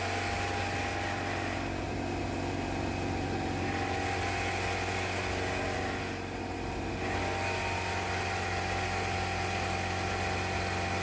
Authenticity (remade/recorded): recorded